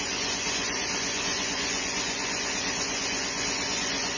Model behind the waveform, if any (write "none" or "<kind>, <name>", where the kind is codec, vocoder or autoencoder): vocoder, Vocos